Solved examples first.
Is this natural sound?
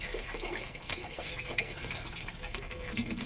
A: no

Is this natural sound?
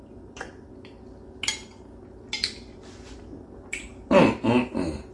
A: yes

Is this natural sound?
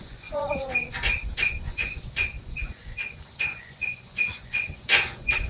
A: no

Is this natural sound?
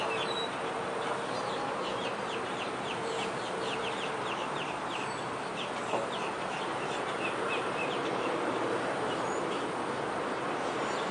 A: no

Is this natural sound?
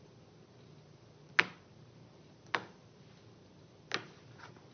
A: yes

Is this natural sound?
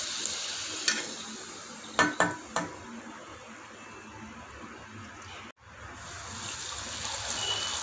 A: yes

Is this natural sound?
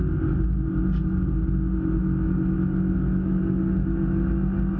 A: yes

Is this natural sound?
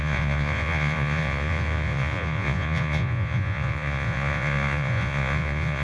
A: no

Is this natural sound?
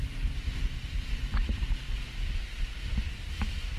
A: no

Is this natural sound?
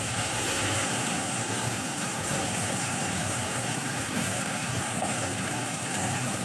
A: no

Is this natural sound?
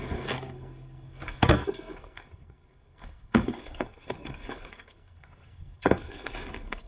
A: no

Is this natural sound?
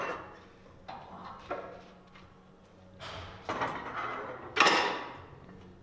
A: yes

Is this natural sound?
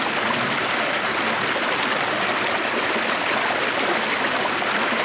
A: yes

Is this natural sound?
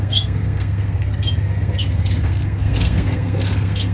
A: no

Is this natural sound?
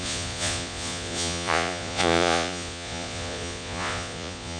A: no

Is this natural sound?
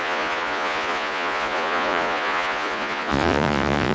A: no